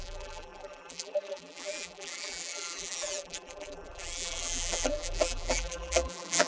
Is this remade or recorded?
remade